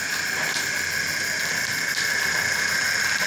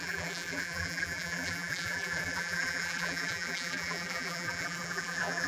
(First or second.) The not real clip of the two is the second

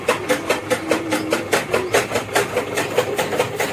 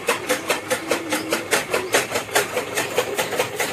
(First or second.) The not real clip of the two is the second